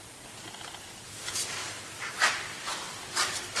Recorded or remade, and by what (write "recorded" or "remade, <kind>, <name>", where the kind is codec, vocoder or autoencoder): recorded